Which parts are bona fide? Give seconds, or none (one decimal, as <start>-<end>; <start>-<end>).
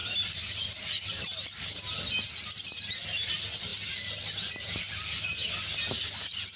0.0-3.7; 5.5-6.6